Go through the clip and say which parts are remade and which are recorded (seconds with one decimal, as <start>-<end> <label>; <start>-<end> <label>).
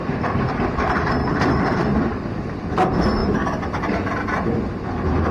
0.0-5.3 recorded